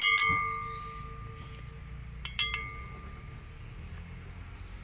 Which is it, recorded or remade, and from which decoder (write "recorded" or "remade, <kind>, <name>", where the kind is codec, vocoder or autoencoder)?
recorded